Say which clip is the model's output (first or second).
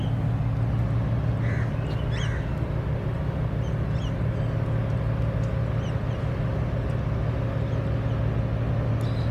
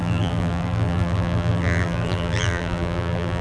second